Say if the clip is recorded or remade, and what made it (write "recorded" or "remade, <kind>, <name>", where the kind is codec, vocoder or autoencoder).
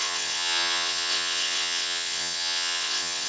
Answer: remade, vocoder, WaveNeXt